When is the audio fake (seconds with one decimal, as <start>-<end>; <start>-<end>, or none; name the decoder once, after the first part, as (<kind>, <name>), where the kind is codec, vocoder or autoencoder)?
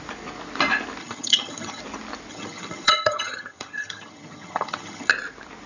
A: 1.0-1.8 (vocoder, HiFi-GAN); 2.3-5.1